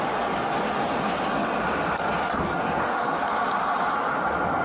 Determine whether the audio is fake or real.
real